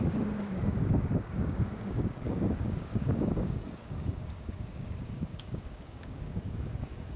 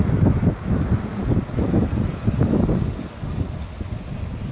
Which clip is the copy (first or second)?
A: first